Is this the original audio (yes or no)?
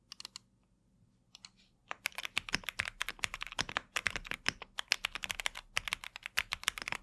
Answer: yes